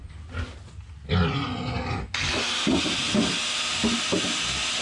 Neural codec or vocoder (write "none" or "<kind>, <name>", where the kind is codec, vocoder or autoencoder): none